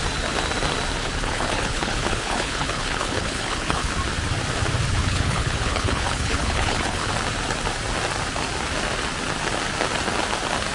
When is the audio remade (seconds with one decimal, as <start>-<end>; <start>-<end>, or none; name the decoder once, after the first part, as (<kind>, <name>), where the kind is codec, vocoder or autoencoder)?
1.0-3.9 (codec, HILCodec); 5.0-7.1